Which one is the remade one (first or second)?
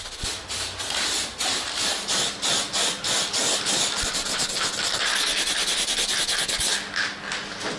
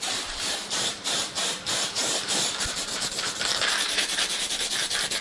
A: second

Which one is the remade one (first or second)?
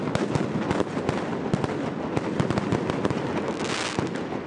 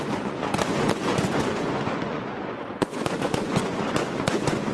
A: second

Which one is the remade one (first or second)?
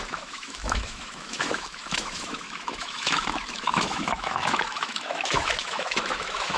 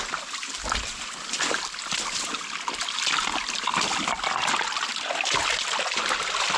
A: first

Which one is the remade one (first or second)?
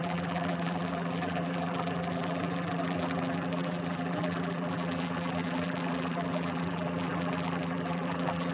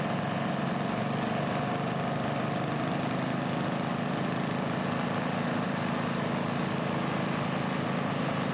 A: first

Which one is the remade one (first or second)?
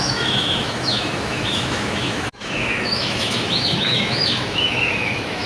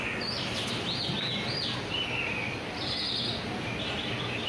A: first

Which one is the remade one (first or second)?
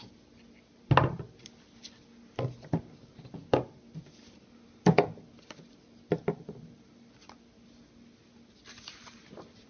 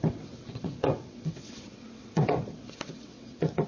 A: second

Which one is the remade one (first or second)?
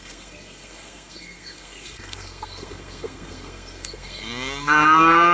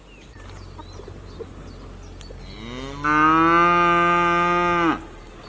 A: first